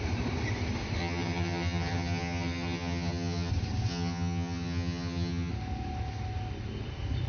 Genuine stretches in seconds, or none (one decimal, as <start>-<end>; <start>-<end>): 0.0-1.0; 3.5-3.9; 5.5-7.3